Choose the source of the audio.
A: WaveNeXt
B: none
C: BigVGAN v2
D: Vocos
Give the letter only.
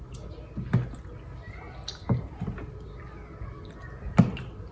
B